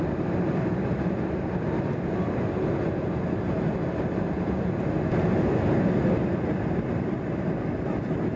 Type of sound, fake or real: real